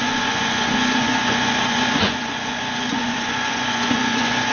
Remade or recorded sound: remade